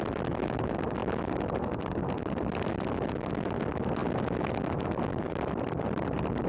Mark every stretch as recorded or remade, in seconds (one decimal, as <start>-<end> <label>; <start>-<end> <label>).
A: 0.0-1.0 remade; 1.0-1.8 recorded; 1.8-4.0 remade; 4.0-5.1 recorded; 5.1-6.5 remade